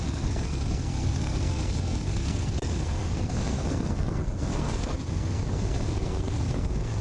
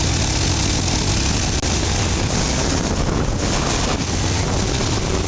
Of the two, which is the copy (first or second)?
first